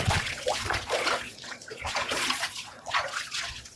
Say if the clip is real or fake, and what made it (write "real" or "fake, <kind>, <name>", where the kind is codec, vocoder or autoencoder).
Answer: fake, vocoder, Vocos